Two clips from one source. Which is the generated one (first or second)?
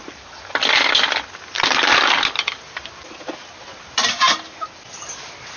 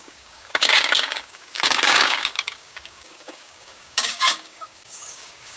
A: second